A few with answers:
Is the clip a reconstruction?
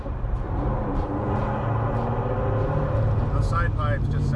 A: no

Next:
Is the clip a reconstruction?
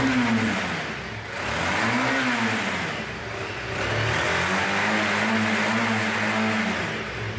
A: no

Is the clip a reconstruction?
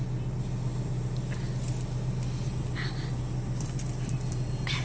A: no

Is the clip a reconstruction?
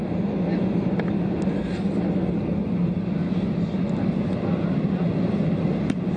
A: no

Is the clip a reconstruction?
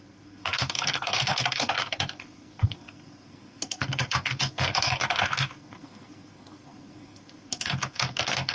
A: yes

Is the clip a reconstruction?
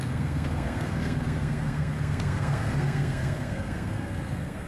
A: yes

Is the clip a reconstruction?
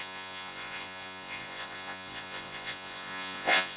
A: yes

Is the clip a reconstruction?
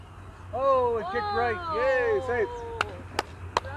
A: no